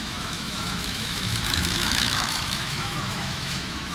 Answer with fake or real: fake